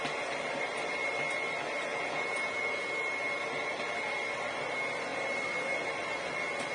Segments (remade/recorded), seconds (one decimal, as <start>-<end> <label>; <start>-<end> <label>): 0.0-1.9 recorded; 1.9-2.9 remade; 2.9-6.7 recorded